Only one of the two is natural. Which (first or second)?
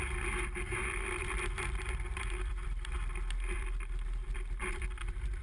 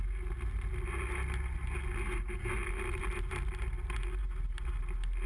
second